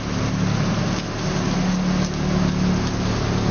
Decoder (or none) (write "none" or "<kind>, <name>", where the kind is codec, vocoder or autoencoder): none